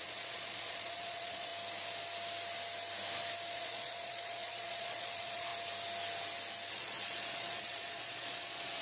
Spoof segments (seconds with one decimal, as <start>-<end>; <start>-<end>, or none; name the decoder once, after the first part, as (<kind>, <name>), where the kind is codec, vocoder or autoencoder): 0.0-1.5 (vocoder, Vocos); 3.5-5.5; 6.7-8.8